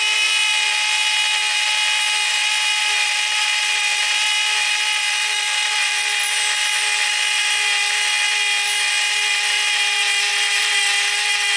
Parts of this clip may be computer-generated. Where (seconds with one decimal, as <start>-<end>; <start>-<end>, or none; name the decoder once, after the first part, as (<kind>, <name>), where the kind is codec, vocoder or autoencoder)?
2.3-7.4 (vocoder, BigVGAN v2); 10.3-10.8